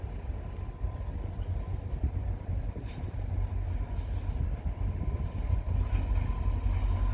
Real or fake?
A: real